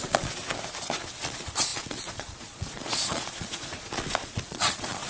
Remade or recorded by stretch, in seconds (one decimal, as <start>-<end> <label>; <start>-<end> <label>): 0.0-0.4 remade; 0.4-1.2 recorded; 1.2-5.1 remade